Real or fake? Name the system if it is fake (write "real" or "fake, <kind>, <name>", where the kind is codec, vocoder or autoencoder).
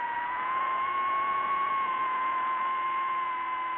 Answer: fake, vocoder, Vocos